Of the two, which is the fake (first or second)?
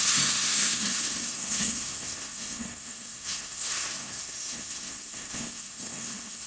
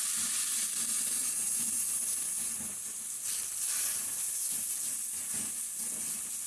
first